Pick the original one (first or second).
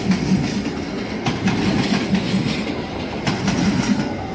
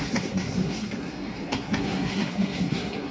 first